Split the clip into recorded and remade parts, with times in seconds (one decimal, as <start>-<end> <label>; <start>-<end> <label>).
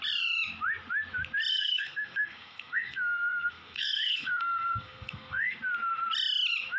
0.0-1.5 recorded; 1.5-5.6 remade; 5.6-6.8 recorded